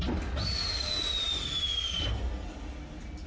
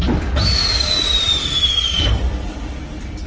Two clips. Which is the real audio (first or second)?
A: first